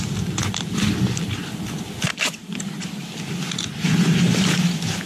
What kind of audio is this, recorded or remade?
recorded